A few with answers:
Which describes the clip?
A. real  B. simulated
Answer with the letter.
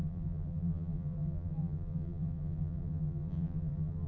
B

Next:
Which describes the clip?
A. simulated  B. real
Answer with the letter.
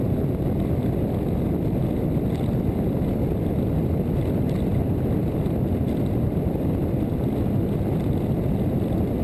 B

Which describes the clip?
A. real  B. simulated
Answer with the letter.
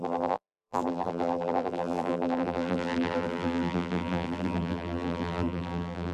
B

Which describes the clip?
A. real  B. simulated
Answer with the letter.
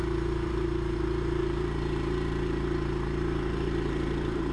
B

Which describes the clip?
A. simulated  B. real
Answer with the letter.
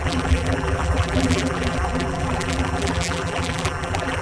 A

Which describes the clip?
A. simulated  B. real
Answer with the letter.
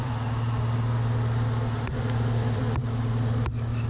A